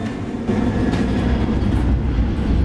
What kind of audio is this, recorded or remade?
recorded